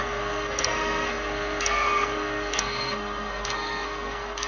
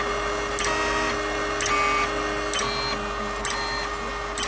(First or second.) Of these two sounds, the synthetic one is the first